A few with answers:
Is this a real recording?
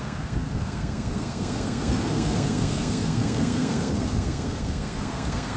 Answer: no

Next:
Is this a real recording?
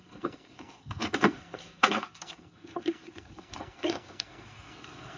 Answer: no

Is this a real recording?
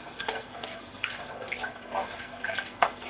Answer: no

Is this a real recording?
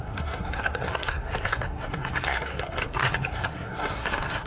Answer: no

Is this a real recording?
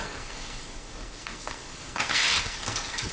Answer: no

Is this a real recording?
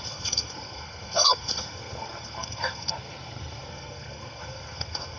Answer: no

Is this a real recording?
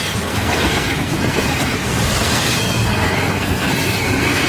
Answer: no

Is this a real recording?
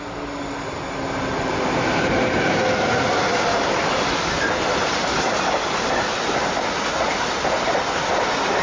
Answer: yes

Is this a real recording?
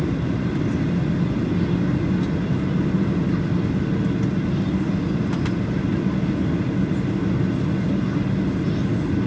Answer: yes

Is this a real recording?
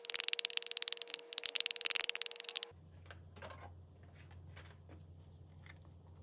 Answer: yes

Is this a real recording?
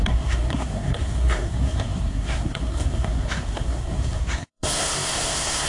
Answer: no